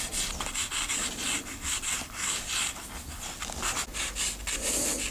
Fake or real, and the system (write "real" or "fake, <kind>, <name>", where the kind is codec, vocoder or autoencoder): real